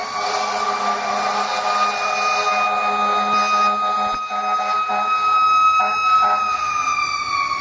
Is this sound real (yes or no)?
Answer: yes